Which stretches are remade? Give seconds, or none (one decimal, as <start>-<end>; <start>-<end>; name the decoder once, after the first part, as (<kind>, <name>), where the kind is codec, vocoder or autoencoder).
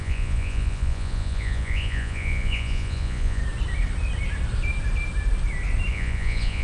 0.0-3.4 (vocoder, Vocos); 5.9-6.6